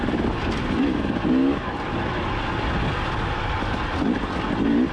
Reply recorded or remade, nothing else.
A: recorded